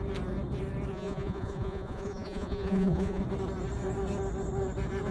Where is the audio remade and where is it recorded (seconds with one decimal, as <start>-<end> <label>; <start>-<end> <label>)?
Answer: 0.0-0.9 recorded; 0.9-3.2 remade; 3.2-5.1 recorded